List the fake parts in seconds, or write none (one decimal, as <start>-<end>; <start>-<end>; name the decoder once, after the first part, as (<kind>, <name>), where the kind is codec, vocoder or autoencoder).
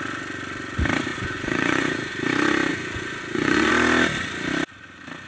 1.1-2.1 (vocoder, Vocos); 2.7-3.7